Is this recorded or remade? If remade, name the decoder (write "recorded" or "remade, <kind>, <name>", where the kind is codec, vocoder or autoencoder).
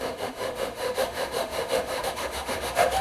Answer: remade, autoencoder, DAC-VAE